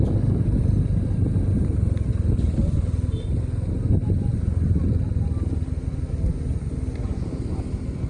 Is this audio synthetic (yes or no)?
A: no